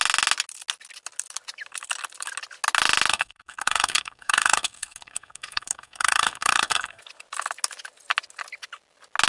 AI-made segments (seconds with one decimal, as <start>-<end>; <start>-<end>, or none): 3.1-7.0